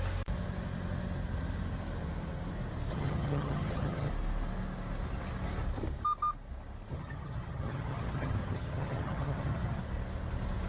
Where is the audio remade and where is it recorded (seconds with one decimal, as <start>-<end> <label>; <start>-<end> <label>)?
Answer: 0.0-2.9 recorded; 2.9-4.1 remade; 4.1-6.9 recorded; 6.9-9.8 remade; 9.8-10.7 recorded